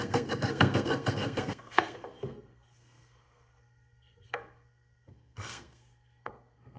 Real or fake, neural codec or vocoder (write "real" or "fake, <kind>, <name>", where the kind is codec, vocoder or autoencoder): fake, codec, SNAC